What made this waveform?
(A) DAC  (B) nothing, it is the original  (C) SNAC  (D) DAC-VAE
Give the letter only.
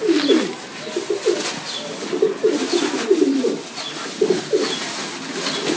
B